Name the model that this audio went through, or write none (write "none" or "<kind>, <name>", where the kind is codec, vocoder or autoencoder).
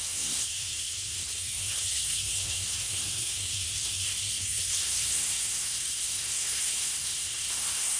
codec, SNAC